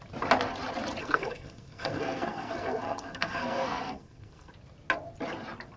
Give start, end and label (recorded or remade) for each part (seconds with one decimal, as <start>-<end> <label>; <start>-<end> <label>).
0.0-1.0 recorded; 1.0-4.5 remade; 4.5-5.8 recorded